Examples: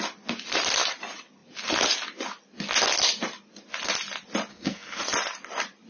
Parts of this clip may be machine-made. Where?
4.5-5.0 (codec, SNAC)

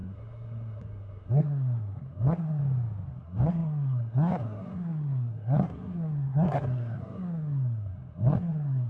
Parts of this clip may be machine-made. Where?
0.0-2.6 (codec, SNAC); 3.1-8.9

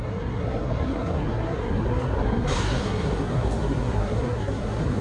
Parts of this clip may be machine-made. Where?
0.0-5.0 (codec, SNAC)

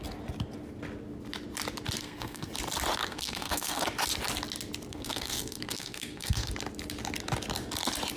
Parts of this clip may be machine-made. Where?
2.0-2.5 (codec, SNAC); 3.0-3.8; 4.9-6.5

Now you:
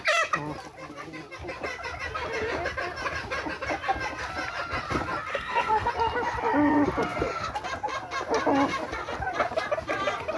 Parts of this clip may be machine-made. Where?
5.3-5.9 (codec, SNAC)

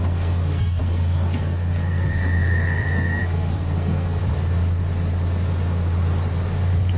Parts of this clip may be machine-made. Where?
0.0-4.2 (codec, SNAC)